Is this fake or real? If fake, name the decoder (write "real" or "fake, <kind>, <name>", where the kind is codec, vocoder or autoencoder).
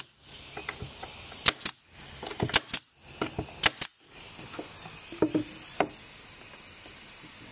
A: real